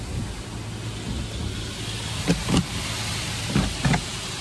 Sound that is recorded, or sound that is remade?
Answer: recorded